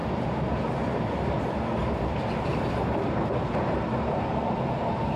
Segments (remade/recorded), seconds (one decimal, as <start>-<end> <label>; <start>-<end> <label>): 0.0-1.8 recorded; 1.8-5.2 remade